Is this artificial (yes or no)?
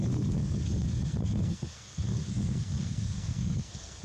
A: yes